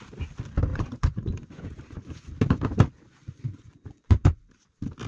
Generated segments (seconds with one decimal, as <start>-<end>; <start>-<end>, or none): 0.7-2.3; 3.2-4.4